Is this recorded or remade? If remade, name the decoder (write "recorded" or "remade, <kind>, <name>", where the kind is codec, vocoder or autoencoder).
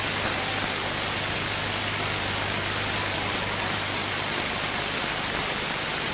recorded